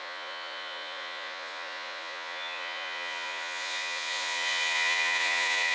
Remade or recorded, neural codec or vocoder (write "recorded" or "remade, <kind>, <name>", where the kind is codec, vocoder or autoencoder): remade, vocoder, Vocos